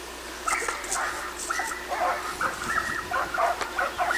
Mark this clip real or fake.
real